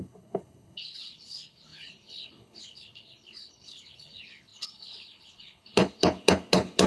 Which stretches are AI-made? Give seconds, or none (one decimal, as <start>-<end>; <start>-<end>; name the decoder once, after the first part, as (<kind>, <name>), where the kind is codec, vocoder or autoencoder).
0.0-6.9 (codec, HILCodec)

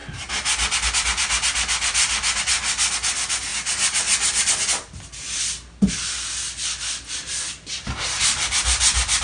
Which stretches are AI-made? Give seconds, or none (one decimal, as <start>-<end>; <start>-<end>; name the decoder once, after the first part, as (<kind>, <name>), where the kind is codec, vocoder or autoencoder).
none

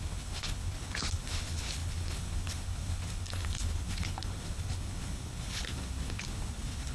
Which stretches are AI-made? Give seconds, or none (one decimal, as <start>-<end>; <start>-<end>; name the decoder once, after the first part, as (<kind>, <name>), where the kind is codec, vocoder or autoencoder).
0.0-6.9 (codec, HILCodec)

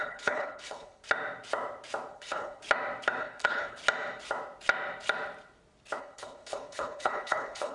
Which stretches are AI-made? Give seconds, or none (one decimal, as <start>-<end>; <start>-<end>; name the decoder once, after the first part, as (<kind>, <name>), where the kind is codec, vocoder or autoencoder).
0.0-1.0 (codec, HILCodec); 2.1-2.6; 3.2-3.8; 6.0-7.7

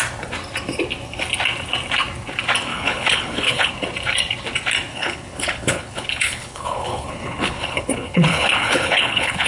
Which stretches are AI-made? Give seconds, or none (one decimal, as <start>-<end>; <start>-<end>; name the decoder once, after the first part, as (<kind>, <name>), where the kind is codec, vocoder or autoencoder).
2.7-3.7 (codec, HILCodec); 4.9-9.5

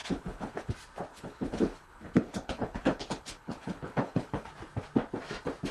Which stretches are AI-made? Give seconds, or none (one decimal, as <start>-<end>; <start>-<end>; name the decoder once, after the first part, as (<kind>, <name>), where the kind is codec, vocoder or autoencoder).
0.0-0.7 (codec, HILCodec); 1.1-4.5

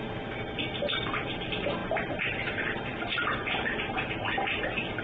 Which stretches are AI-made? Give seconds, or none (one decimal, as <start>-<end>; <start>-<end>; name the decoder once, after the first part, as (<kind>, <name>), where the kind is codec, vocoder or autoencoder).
none

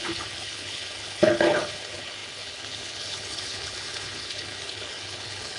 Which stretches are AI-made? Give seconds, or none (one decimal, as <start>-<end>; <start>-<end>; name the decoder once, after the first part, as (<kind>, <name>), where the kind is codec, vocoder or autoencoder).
0.0-5.6 (codec, HILCodec)